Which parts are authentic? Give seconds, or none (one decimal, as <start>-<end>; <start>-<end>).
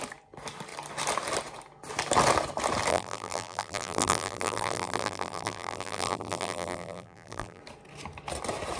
0.0-2.9; 7.6-8.8